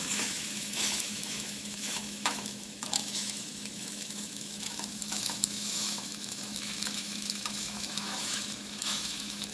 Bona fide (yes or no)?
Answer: no